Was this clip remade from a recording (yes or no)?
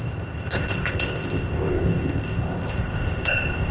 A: yes